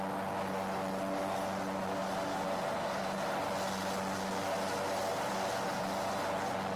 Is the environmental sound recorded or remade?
recorded